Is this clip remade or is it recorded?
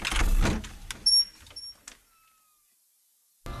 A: recorded